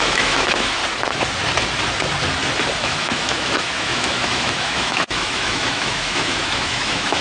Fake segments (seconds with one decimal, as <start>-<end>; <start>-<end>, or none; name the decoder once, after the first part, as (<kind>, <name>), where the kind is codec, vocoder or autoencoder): 0.0-0.8 (autoencoder, DAC-VAE); 2.8-7.2